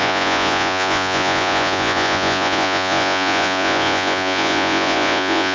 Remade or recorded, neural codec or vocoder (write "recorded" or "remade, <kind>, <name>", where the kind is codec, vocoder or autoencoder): remade, vocoder, Vocos